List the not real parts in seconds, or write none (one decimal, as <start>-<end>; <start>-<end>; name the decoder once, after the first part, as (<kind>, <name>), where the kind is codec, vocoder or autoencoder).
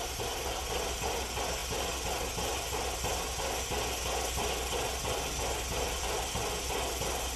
none